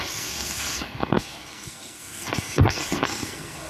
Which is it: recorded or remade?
remade